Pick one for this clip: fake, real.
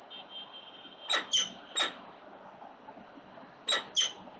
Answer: real